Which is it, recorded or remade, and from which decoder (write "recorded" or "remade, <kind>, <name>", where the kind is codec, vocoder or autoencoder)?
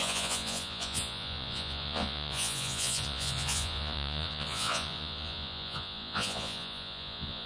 remade, vocoder, Vocos